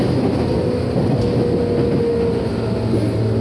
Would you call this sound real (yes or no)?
yes